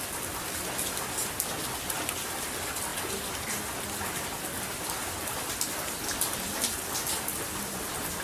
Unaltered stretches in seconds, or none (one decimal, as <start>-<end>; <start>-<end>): 0.0-8.2